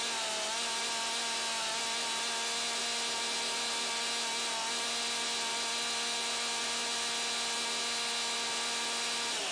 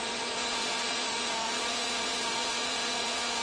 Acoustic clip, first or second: first